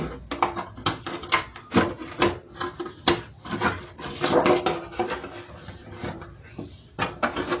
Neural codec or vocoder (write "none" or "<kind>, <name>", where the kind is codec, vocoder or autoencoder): none